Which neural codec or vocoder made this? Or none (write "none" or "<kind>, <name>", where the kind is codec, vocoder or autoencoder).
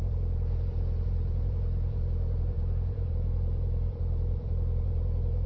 vocoder, Vocos